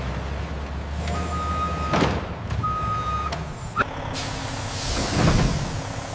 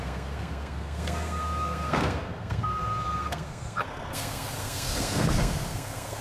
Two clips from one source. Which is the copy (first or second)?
second